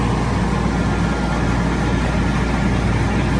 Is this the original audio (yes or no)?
yes